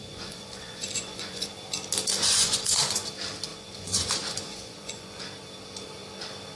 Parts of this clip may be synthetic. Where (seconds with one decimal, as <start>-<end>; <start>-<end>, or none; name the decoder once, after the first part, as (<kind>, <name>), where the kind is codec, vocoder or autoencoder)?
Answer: 0.0-1.5 (vocoder, Vocos); 2.2-3.1; 3.5-5.2